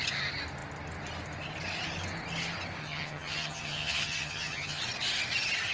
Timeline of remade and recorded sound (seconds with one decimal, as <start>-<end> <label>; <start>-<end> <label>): 0.0-2.8 recorded; 2.8-4.8 remade; 4.8-5.7 recorded